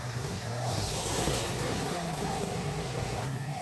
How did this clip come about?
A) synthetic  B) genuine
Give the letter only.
A